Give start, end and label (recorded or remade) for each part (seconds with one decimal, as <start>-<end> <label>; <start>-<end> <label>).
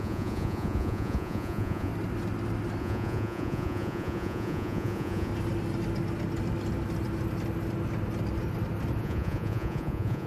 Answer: 0.0-1.9 remade; 1.9-2.8 recorded; 2.8-5.3 remade; 5.3-9.0 recorded; 9.0-10.3 remade